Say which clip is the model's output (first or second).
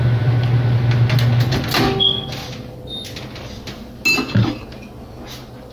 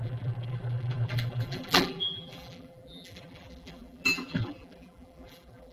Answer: second